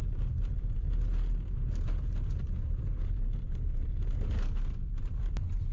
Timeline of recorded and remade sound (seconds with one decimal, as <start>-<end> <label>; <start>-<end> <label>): 0.0-5.7 recorded